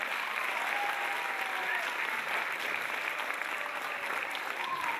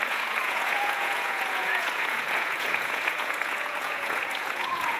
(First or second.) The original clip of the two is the first